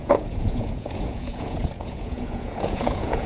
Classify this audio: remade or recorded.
remade